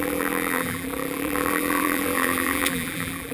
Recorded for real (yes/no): no